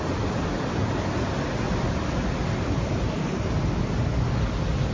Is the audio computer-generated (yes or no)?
no